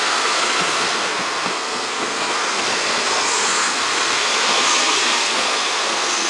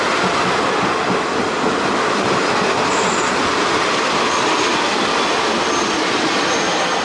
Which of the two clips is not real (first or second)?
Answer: first